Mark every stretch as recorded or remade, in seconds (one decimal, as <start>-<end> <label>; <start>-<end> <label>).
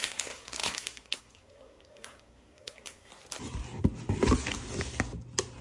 0.0-3.1 remade; 3.1-5.6 recorded